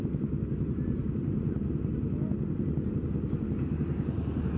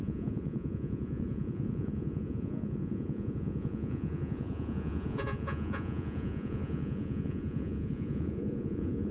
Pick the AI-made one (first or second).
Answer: second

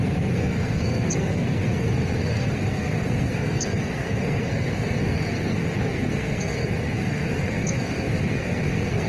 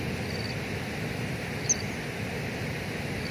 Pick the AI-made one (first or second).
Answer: first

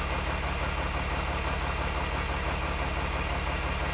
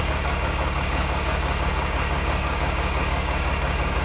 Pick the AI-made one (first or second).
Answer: second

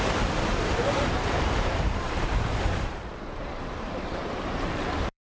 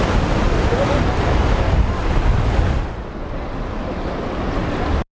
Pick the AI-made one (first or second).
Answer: first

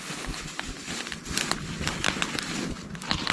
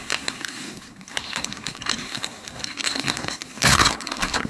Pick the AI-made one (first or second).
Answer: second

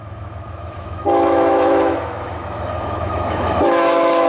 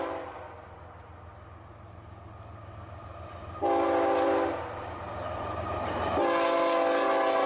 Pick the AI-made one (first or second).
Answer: first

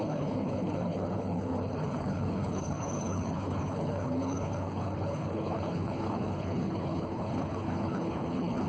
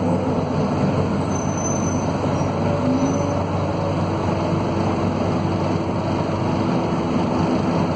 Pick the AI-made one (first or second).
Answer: first